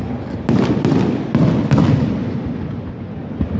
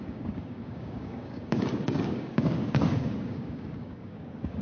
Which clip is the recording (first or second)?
first